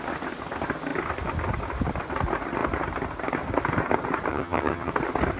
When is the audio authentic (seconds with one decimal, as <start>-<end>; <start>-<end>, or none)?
0.0-4.3; 4.9-5.4